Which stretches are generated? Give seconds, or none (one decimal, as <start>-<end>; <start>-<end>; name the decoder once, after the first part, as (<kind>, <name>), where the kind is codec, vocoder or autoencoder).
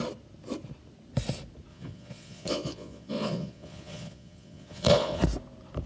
1.7-5.2 (vocoder, Vocos)